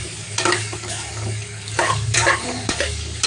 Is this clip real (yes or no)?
no